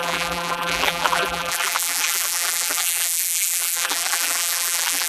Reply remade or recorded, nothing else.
remade